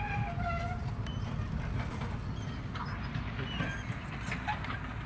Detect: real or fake real